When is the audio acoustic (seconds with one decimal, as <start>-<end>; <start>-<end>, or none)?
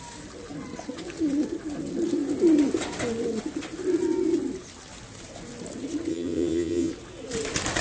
0.0-6.1; 6.9-7.8